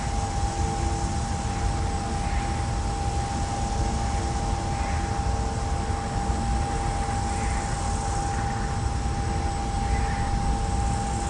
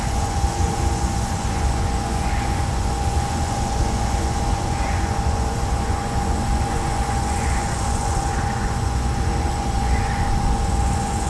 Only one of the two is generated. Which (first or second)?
second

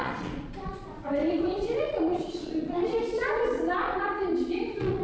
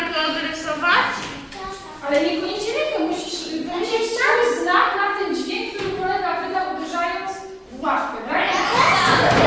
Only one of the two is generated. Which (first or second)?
first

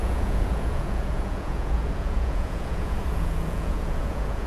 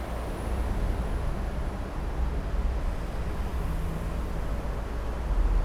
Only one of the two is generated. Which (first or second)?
first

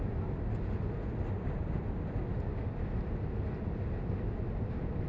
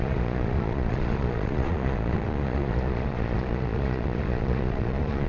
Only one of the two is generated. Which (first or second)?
second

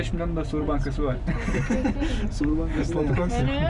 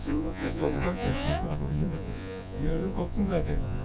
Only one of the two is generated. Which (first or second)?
second